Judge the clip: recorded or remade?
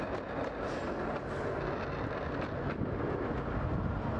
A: recorded